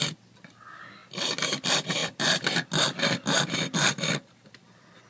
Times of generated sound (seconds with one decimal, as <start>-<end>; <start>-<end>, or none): none

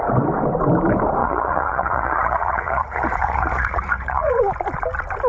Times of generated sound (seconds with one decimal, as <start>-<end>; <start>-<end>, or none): 1.2-4.4

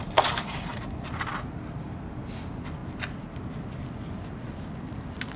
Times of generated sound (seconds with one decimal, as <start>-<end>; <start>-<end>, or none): none